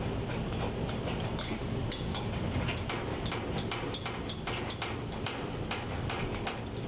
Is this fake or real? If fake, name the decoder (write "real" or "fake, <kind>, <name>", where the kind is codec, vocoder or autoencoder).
real